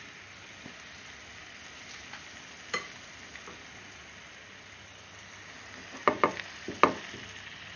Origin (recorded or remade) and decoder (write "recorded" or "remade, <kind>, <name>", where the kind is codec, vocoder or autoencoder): recorded